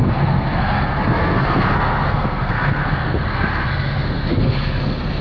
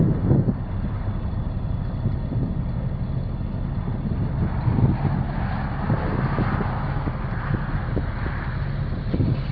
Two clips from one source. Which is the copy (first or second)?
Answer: first